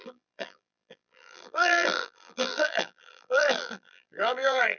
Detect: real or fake fake